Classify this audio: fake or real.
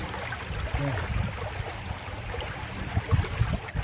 real